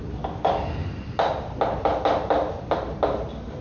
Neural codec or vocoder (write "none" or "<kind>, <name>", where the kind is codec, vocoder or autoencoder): none